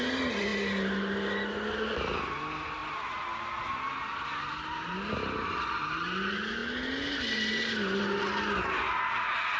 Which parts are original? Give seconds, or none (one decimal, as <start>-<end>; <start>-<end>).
0.0-9.6